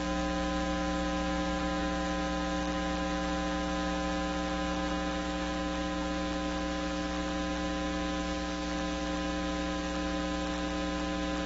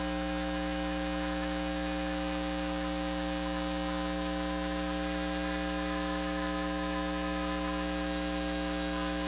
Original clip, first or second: first